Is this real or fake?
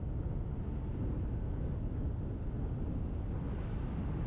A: real